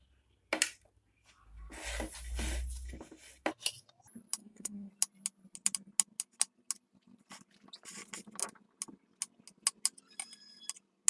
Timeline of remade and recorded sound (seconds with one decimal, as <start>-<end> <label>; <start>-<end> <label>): 0.0-4.4 recorded; 4.4-4.9 remade; 4.9-11.1 recorded